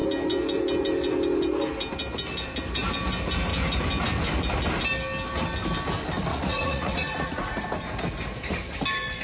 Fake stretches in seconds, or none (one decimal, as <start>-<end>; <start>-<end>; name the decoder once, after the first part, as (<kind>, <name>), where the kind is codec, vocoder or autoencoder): 6.3-7.6 (vocoder, Vocos)